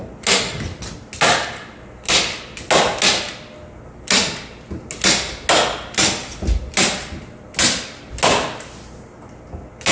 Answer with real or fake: real